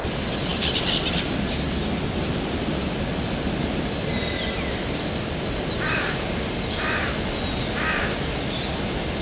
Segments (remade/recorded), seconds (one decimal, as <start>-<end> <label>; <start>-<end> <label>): 0.0-9.2 recorded